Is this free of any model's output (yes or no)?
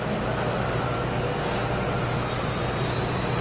yes